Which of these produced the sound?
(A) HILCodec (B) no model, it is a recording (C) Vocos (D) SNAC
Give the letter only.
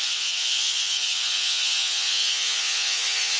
C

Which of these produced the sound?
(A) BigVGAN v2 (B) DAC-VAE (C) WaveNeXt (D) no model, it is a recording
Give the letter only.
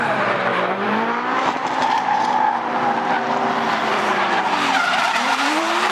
A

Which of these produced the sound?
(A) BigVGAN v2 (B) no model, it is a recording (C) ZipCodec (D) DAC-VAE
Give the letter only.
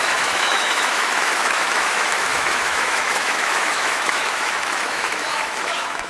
D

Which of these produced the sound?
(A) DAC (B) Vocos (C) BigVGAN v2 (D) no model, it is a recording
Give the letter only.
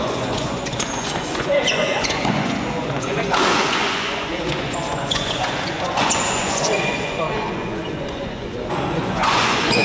B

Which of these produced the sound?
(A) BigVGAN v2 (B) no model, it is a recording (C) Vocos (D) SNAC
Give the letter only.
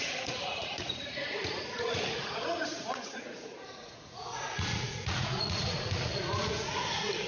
C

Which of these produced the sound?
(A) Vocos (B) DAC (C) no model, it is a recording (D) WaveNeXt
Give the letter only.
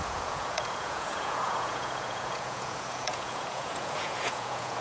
A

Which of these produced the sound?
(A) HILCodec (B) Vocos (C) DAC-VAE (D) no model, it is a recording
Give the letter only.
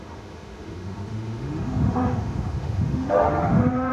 C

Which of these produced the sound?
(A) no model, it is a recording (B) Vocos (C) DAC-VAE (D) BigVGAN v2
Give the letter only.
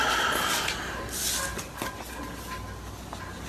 A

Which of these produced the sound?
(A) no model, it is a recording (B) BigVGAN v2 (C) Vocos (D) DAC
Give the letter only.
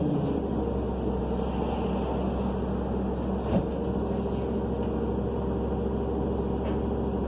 A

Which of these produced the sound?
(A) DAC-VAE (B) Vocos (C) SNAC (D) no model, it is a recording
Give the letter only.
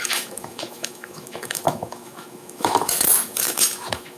A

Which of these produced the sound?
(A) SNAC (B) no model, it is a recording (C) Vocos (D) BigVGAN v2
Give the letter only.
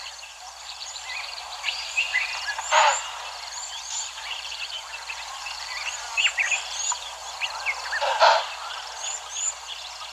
D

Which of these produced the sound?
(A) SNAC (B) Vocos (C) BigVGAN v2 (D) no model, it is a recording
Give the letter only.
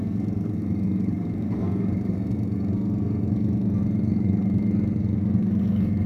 A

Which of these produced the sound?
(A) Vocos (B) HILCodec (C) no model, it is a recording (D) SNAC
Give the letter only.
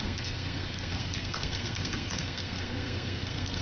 D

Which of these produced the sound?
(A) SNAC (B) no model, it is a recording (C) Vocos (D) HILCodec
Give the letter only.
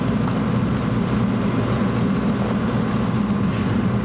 B